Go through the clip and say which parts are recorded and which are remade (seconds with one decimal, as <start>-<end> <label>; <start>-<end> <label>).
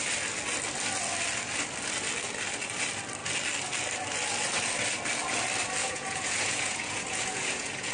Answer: 0.0-5.8 recorded; 5.8-7.9 remade